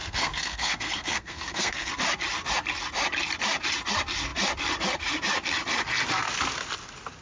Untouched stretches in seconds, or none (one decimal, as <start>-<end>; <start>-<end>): 1.9-7.2